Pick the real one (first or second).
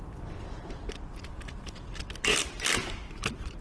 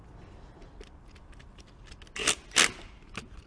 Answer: second